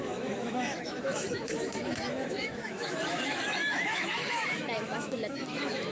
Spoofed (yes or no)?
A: yes